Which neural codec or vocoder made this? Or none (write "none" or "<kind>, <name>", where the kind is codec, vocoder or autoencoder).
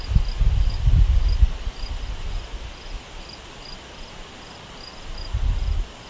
none